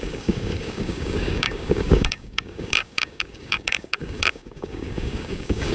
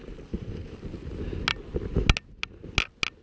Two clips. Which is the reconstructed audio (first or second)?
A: first